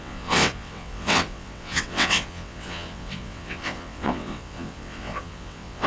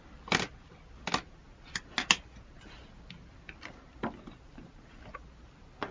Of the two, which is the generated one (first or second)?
first